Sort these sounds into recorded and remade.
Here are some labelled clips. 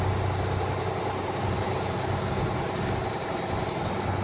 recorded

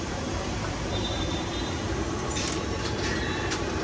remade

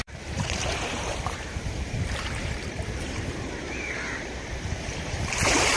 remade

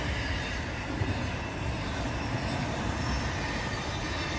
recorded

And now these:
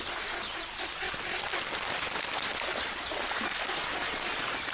recorded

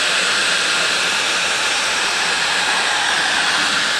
remade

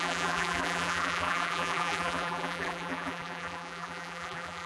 remade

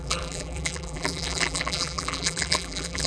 remade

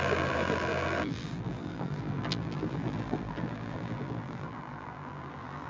remade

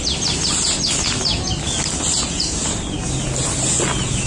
recorded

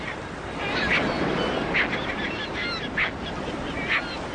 recorded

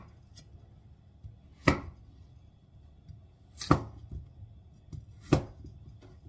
recorded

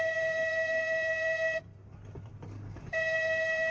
recorded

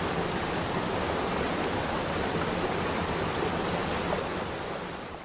recorded